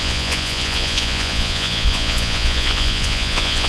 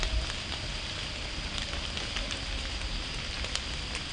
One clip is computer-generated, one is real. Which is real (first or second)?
second